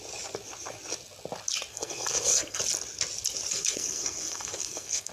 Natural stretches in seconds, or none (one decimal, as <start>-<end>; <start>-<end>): 0.0-1.7; 2.6-3.5